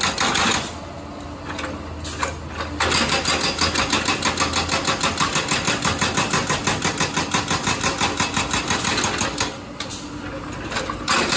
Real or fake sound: real